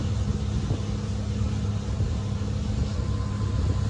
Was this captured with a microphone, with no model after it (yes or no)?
yes